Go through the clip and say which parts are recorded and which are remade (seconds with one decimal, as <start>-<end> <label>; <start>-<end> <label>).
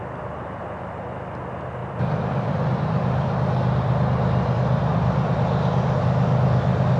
0.0-1.8 recorded; 1.8-6.0 remade; 6.0-7.0 recorded